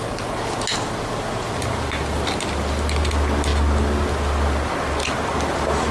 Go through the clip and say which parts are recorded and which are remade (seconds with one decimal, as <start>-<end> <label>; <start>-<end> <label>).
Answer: 0.0-5.9 recorded